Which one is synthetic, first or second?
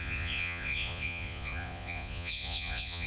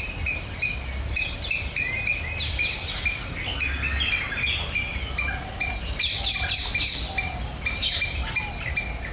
first